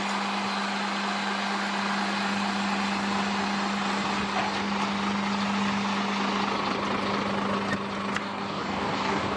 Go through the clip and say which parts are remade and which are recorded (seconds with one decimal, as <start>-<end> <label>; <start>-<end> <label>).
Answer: 0.0-8.2 recorded; 8.2-9.4 remade